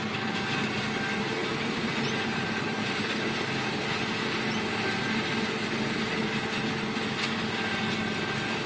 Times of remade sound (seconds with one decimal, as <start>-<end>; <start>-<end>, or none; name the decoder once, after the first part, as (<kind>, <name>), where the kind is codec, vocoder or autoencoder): 1.4-5.4 (vocoder, BigVGAN v2)